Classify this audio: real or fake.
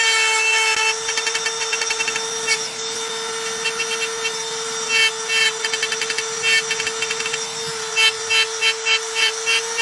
real